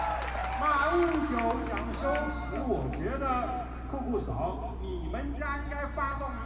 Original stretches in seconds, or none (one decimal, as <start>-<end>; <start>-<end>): 0.0-6.5